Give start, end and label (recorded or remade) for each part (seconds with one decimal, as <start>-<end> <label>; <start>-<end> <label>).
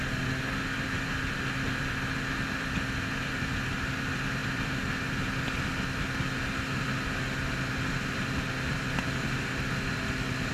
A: 0.0-10.5 recorded